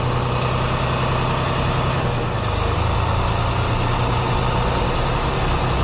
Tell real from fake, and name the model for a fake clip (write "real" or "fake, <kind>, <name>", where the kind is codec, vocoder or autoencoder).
real